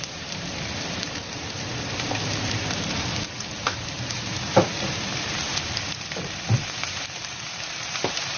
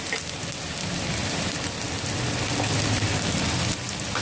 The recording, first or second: second